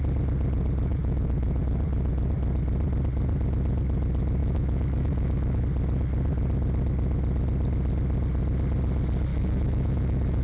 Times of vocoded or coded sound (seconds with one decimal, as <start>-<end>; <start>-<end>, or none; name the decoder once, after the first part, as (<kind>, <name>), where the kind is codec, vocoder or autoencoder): 0.9-1.6 (autoencoder, DAC-VAE); 4.4-5.6; 9.3-10.4